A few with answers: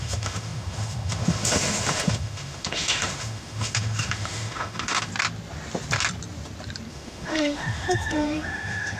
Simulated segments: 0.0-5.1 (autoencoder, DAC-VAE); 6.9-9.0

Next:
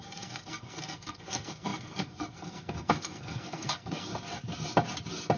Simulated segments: 0.0-4.1 (codec, SNAC)

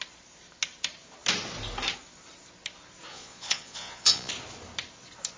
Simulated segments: 3.1-4.3 (vocoder, Vocos)

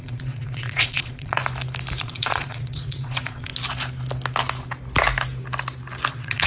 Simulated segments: 0.0-1.4 (vocoder, Vocos); 2.0-3.5; 6.1-6.5

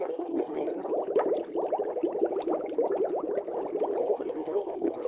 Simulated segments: 0.0-0.9 (codec, SNAC); 4.0-5.1